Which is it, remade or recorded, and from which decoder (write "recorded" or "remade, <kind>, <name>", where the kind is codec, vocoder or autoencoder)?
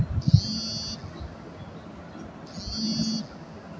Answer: recorded